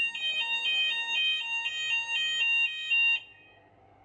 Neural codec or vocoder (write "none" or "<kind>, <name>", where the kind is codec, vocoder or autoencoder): none